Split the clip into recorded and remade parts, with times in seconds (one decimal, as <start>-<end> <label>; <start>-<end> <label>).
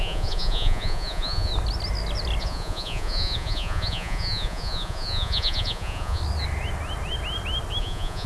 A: 0.0-1.5 remade; 1.5-2.4 recorded; 2.4-6.2 remade; 6.2-7.8 recorded; 7.8-8.3 remade